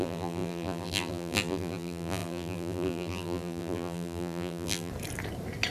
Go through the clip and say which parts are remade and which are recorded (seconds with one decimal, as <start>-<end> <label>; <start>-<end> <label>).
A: 0.0-4.9 remade; 4.9-5.7 recorded